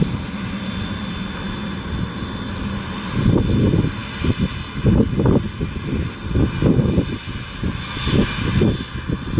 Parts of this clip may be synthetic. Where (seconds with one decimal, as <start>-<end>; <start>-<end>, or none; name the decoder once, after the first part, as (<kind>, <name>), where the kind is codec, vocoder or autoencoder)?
none